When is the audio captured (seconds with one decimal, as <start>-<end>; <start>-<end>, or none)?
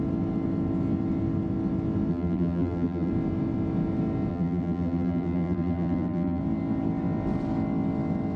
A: 0.0-2.1; 3.1-4.3; 6.4-8.4